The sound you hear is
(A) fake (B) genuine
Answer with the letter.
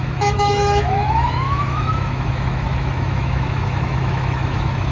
A